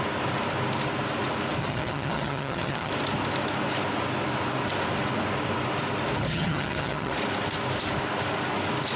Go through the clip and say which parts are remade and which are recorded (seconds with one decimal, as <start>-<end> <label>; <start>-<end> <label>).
0.0-1.6 recorded; 1.6-2.9 remade; 2.9-6.3 recorded; 6.3-7.1 remade; 7.1-9.0 recorded